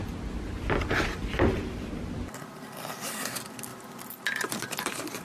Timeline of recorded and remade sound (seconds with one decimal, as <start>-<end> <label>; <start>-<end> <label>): 0.0-5.2 recorded